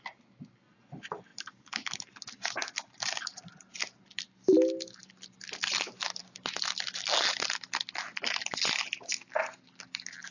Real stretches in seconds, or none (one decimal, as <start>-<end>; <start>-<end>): 0.0-10.3